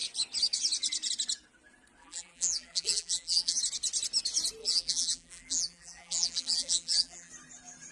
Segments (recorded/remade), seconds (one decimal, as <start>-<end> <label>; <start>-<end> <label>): 0.0-2.0 recorded; 2.0-3.6 remade; 3.6-4.6 recorded; 4.6-7.3 remade; 7.3-7.9 recorded